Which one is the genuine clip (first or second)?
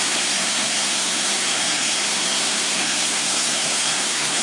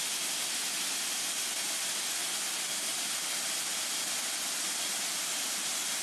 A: second